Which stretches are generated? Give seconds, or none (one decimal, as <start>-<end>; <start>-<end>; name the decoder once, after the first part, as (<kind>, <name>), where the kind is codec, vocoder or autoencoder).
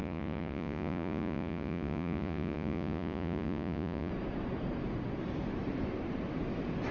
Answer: 0.0-4.1 (vocoder, Vocos)